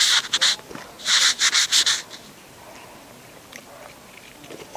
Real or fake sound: real